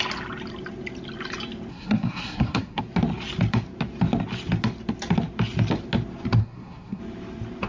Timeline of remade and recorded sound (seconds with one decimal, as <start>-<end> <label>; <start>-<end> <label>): 0.0-1.7 recorded; 1.7-2.8 remade; 2.8-6.4 recorded; 6.4-7.0 remade; 7.0-7.7 recorded